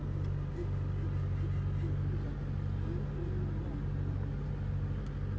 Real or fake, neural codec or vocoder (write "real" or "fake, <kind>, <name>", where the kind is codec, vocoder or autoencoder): real